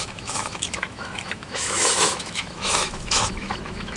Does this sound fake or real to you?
fake